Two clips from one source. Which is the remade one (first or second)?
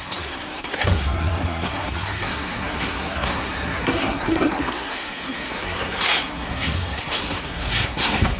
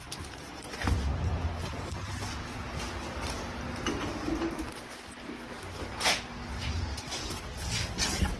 first